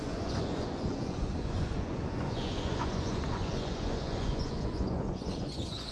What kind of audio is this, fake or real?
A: fake